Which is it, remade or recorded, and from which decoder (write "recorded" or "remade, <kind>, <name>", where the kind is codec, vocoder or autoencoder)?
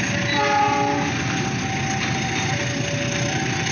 recorded